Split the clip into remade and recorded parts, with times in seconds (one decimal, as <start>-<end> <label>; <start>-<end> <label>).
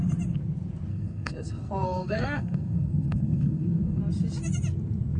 0.0-0.9 recorded; 0.9-4.0 remade; 4.0-5.2 recorded